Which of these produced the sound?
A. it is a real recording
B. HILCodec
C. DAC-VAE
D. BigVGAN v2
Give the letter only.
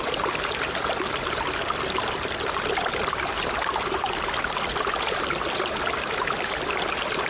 A